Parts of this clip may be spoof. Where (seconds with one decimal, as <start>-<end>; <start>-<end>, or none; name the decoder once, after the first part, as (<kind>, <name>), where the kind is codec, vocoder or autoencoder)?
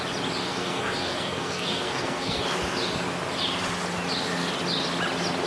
0.4-2.4 (codec, SNAC)